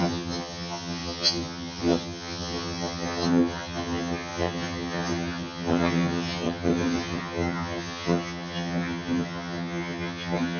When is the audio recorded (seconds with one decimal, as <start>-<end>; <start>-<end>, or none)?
none